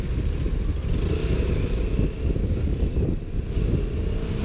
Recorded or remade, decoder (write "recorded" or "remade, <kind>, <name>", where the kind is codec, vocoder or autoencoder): recorded